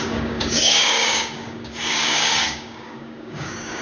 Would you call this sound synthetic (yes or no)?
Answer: yes